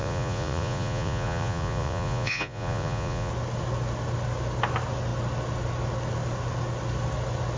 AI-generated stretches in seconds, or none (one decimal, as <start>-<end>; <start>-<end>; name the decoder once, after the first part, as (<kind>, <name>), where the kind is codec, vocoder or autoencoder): 0.0-3.3 (vocoder, Vocos)